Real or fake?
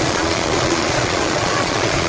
fake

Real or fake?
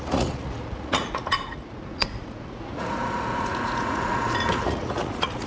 fake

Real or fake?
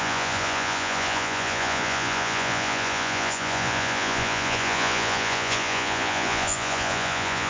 fake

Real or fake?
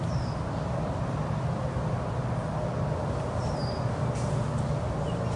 real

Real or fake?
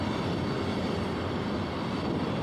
real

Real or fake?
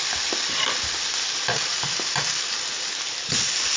real